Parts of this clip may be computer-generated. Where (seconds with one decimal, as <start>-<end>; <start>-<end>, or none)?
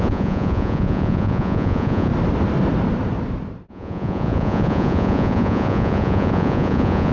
0.0-2.1; 3.7-7.1